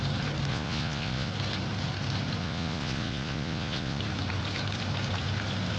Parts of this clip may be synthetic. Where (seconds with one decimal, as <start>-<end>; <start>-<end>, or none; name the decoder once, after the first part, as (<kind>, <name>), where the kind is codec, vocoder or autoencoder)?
0.5-1.3 (vocoder, Vocos); 2.4-4.0